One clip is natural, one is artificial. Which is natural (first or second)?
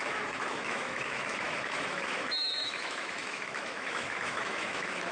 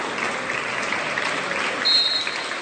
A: second